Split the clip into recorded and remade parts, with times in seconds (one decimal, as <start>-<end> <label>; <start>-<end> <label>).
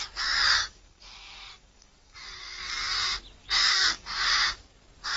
0.0-0.6 recorded; 0.6-2.6 remade; 2.6-3.4 recorded; 3.4-4.3 remade; 4.3-5.2 recorded